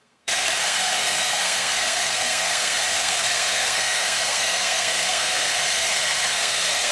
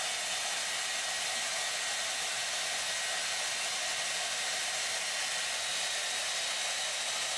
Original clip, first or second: second